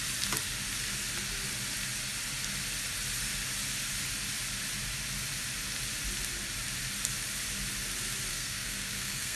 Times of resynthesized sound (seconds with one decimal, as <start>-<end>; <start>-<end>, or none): 8.3-9.4